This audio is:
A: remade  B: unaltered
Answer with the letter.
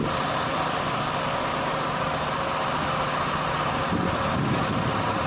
B